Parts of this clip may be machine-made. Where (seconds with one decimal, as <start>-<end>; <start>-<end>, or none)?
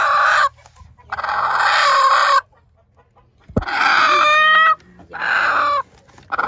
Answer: none